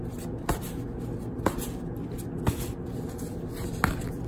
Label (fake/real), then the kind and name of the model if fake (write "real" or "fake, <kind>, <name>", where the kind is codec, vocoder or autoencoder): real